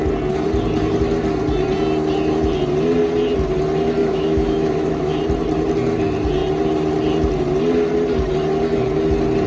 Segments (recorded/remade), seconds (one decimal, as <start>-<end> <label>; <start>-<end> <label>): 0.0-4.0 recorded; 4.0-5.1 remade; 5.1-9.5 recorded